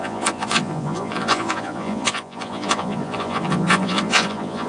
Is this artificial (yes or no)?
yes